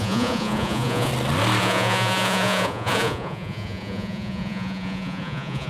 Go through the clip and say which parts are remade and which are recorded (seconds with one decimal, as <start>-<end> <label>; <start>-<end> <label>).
0.0-1.1 remade; 1.1-1.6 recorded; 1.6-5.7 remade